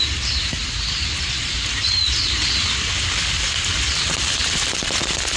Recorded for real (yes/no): yes